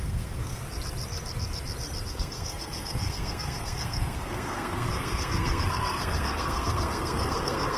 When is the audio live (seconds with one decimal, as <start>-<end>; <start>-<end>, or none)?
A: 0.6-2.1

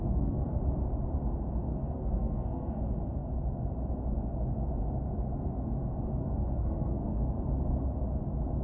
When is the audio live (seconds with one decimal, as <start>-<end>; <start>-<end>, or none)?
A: 0.6-1.7; 2.8-6.2; 7.3-8.6

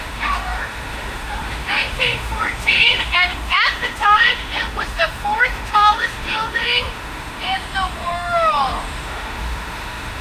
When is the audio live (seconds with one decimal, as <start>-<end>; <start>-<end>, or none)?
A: none